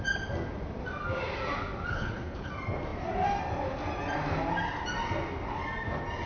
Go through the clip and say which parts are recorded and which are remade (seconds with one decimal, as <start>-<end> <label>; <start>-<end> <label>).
0.0-1.9 recorded; 1.9-2.5 remade; 2.5-6.3 recorded